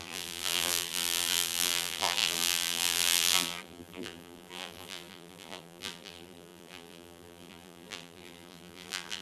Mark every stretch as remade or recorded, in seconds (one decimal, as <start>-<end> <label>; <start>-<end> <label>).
0.0-9.2 remade